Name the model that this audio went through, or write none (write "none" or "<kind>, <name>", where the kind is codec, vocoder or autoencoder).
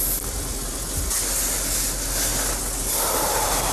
none